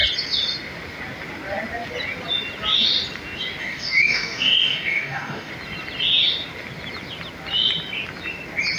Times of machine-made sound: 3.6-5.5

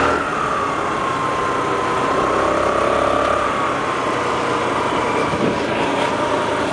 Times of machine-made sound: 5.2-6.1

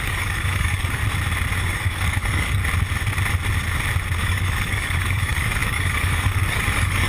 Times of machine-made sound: 0.0-1.0; 1.6-2.6; 4.2-7.1

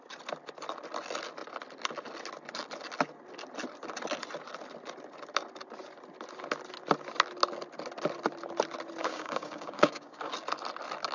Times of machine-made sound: 9.0-10.3

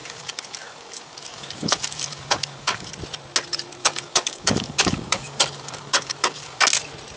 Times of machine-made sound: 0.0-2.9; 3.8-6.6

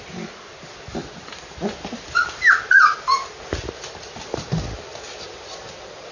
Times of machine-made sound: none

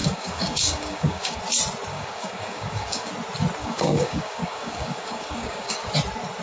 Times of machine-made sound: 0.0-1.4; 1.9-3.1; 3.6-5.9

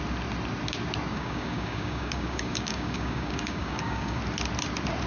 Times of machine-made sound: 1.1-4.2